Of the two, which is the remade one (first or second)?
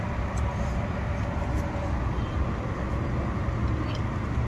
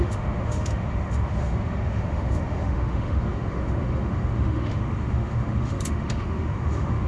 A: second